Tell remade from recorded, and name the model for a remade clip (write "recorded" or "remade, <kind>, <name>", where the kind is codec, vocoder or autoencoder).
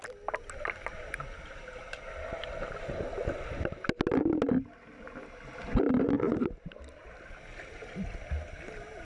recorded